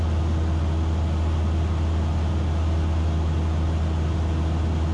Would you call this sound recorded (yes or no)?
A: yes